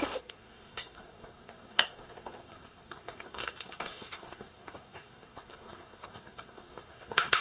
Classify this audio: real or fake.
fake